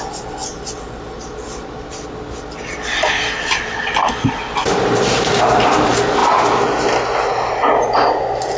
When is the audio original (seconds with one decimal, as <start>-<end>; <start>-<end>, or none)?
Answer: 0.0-4.6; 5.3-8.6